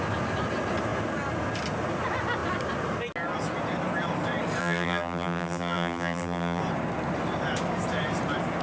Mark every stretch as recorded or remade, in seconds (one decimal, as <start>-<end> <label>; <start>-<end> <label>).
0.0-4.6 recorded; 4.6-6.6 remade; 6.6-8.6 recorded